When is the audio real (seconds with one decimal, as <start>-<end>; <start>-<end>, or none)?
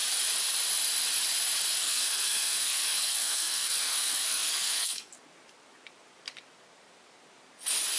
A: 0.0-1.8; 5.1-8.0